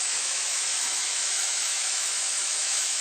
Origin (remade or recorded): remade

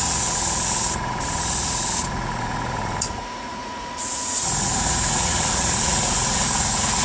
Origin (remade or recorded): remade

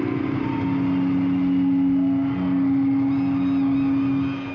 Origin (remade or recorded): recorded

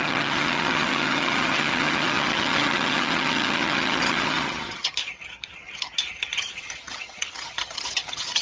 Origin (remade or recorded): remade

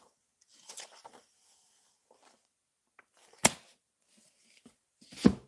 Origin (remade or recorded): recorded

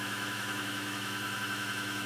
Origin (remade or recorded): remade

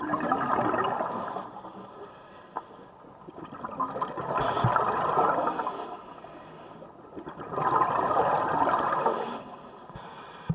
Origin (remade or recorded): recorded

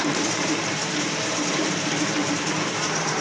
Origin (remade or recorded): remade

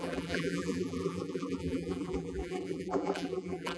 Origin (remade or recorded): remade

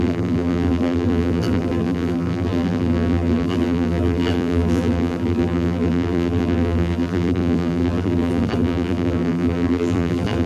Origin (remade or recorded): remade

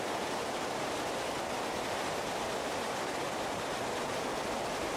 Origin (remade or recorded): recorded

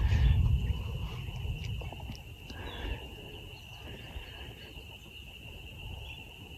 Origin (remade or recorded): recorded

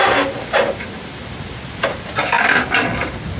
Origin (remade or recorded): recorded